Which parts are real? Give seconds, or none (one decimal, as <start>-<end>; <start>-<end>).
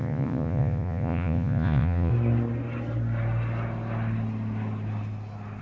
2.1-5.6